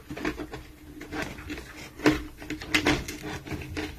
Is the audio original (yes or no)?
yes